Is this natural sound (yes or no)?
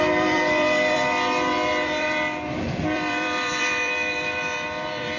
no